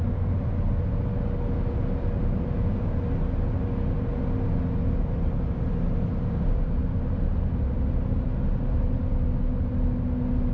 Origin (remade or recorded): recorded